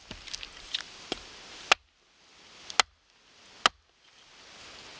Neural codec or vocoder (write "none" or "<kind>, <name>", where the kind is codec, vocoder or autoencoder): none